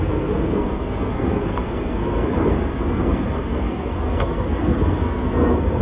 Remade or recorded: remade